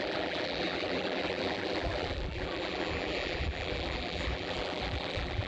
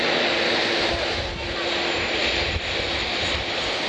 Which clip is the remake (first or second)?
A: first